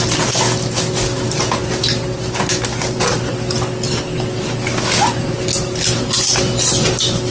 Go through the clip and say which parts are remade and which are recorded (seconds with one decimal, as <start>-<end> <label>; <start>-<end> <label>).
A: 0.0-7.3 recorded